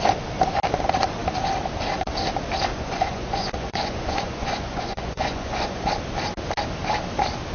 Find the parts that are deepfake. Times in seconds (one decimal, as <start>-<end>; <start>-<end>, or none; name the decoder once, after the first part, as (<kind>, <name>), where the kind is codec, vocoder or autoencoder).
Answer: 2.7-5.9 (vocoder, Vocos)